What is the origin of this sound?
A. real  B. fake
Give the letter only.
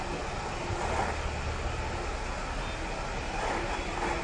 A